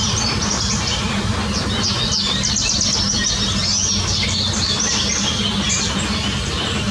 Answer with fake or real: real